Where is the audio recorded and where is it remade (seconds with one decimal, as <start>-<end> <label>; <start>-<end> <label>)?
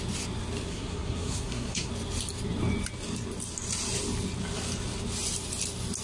0.0-0.7 recorded; 0.7-1.9 remade; 1.9-6.0 recorded